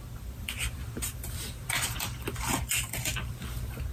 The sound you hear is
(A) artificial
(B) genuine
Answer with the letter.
A